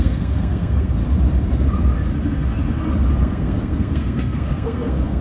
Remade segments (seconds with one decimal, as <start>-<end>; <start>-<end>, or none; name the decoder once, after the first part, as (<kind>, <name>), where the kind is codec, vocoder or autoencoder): 0.0-1.0 (codec, SNAC); 3.1-5.2